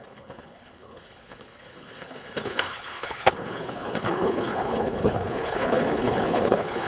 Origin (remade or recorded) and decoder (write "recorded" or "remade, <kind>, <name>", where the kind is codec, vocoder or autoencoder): remade, codec, HILCodec